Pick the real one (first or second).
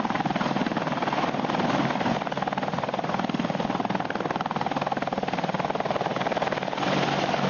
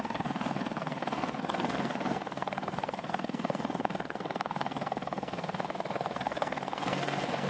first